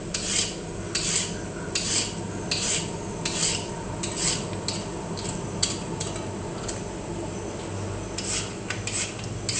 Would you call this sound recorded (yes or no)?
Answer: yes